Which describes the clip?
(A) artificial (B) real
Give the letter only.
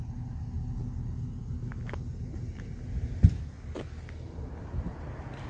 B